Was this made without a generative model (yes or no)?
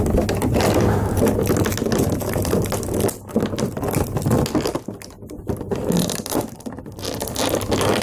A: yes